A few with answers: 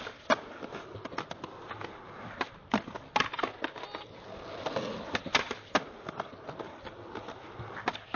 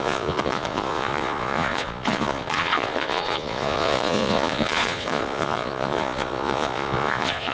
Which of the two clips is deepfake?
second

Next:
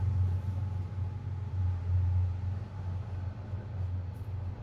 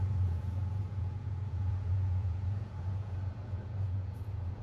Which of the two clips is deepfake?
second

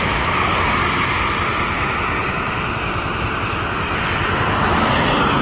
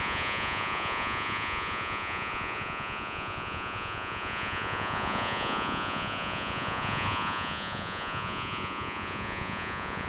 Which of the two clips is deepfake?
second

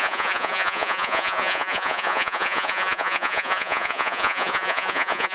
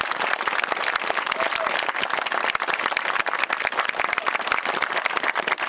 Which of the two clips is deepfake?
first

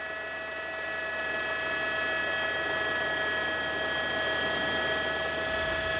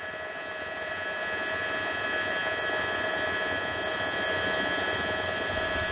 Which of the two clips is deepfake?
second